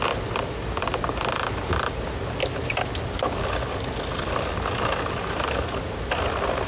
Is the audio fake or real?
real